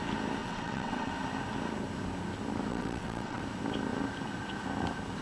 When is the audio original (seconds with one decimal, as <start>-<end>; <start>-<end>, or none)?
0.0-0.4; 1.1-2.7; 3.4-5.2